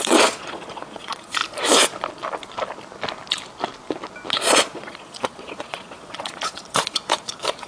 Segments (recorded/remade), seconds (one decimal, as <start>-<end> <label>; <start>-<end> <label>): 0.0-1.4 remade; 1.4-4.3 recorded; 4.3-7.7 remade

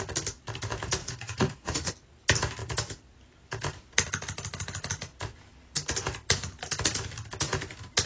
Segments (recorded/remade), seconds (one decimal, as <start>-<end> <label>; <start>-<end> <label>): 0.0-1.0 recorded; 1.0-1.9 remade; 1.9-8.1 recorded

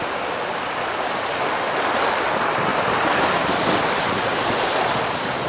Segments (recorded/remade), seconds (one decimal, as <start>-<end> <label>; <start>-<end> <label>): 0.0-5.5 recorded

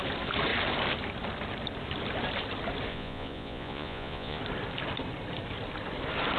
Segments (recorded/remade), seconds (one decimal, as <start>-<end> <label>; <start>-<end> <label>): 0.0-2.9 recorded; 2.9-4.4 remade; 4.4-6.4 recorded

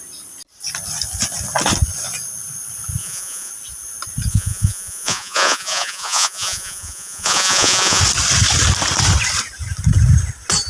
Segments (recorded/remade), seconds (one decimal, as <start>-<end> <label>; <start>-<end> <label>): 0.0-3.0 recorded; 3.0-3.5 remade; 3.5-4.3 recorded; 4.3-8.0 remade; 8.0-10.7 recorded

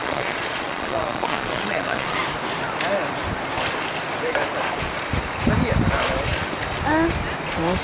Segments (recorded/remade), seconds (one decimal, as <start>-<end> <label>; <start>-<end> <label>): 0.0-2.2 remade; 2.2-7.8 recorded